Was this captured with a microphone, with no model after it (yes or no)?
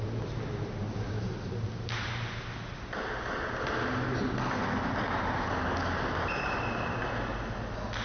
yes